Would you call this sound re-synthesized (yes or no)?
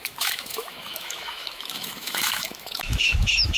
yes